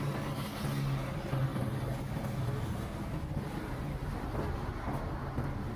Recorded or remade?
recorded